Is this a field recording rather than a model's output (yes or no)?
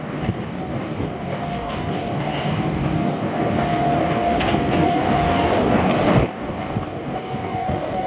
no